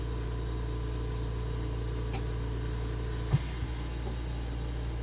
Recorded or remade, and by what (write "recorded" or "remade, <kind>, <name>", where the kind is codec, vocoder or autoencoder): recorded